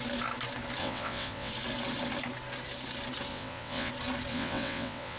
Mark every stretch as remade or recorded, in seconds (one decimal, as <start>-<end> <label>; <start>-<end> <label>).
0.0-0.8 recorded; 0.8-1.5 remade; 1.5-3.3 recorded; 3.3-3.9 remade; 3.9-4.3 recorded; 4.3-5.2 remade